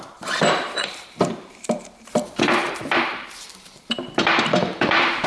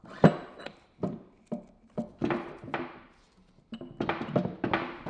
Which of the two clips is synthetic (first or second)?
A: first